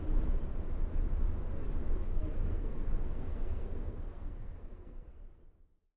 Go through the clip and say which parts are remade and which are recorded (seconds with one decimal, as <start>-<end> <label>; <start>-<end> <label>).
0.0-1.8 recorded; 1.8-5.4 remade; 5.4-6.0 recorded